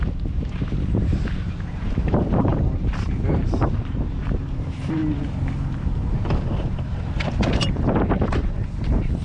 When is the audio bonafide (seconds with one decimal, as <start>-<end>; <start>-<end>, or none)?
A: 5.0-7.5